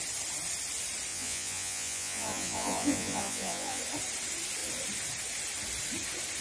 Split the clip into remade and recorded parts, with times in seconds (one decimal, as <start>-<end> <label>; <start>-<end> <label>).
0.0-1.1 recorded; 1.1-3.8 remade; 3.8-6.4 recorded